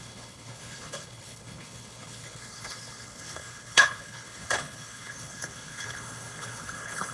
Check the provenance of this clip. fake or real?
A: fake